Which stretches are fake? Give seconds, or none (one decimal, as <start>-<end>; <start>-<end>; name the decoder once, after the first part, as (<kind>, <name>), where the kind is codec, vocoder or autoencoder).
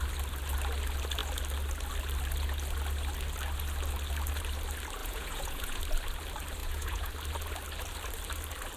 5.0-5.8 (vocoder, Vocos); 6.6-7.1